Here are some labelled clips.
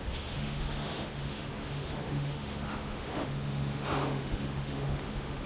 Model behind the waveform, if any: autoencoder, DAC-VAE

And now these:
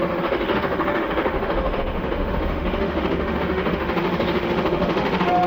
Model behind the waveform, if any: autoencoder, DAC-VAE